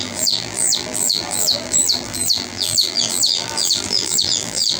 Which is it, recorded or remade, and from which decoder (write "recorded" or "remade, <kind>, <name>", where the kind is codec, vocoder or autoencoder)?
remade, vocoder, BigVGAN v2